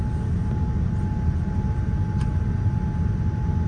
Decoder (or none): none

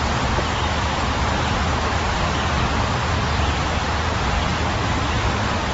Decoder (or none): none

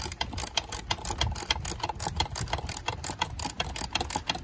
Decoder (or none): none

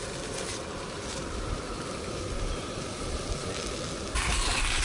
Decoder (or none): none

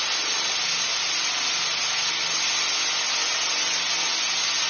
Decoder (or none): none